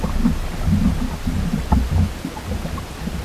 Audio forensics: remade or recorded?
recorded